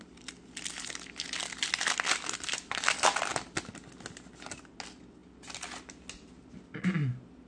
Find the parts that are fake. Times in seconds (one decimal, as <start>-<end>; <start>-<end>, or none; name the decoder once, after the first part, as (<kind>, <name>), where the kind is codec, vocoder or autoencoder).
none